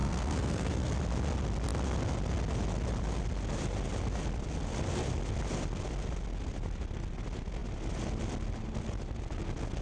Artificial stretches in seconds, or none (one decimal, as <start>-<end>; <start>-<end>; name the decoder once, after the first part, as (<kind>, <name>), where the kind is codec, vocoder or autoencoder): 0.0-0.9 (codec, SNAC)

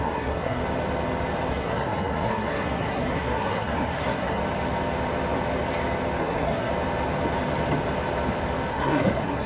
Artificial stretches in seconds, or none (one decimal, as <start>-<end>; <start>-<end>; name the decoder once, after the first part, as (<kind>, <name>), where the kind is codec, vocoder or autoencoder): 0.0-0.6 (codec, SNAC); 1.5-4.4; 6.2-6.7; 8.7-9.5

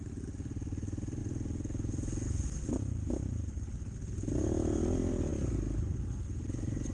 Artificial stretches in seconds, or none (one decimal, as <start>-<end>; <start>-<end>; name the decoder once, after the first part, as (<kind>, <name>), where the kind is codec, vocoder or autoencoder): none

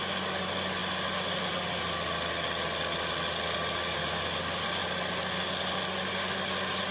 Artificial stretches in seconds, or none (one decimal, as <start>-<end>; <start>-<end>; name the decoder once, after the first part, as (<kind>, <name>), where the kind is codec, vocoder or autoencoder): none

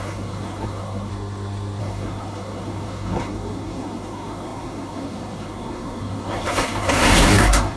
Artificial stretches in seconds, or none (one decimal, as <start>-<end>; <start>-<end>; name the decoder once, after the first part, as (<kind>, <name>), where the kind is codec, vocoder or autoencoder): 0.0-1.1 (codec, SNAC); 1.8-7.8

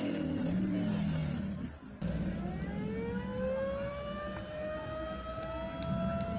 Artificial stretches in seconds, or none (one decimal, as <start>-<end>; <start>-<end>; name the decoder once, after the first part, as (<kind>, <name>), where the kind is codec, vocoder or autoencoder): none

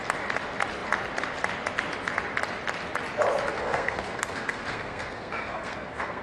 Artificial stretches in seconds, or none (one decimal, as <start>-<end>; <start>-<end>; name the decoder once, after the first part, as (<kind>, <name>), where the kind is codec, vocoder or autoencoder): 3.5-6.2 (codec, SNAC)